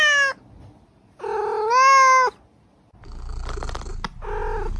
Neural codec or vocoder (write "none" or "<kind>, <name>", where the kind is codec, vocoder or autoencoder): none